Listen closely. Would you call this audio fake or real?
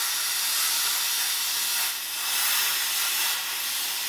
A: real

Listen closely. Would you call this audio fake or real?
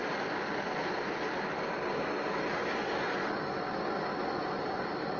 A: real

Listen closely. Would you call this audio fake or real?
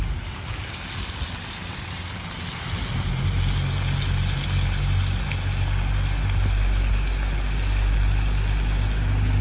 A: real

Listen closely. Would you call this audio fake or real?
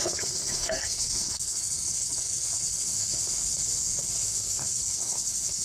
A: fake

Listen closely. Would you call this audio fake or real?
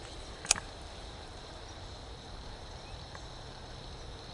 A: fake